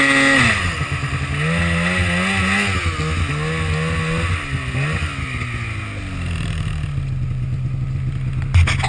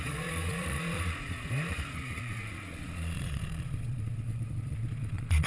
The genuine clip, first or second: first